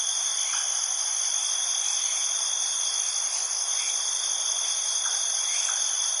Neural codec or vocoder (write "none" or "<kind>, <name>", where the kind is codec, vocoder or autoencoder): none